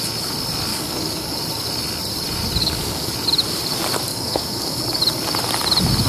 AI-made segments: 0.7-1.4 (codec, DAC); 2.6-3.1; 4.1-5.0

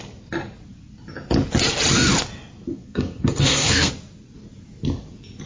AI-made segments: 2.7-3.9 (codec, SNAC)